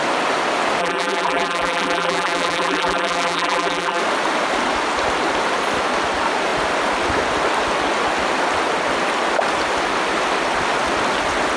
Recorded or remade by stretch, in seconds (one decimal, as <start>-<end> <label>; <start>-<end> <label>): 0.0-0.8 recorded; 0.8-4.0 remade; 4.0-11.6 recorded